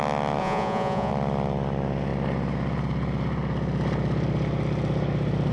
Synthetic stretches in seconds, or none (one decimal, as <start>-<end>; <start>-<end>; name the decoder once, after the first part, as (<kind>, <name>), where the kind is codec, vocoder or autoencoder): 0.4-1.1 (vocoder, Vocos)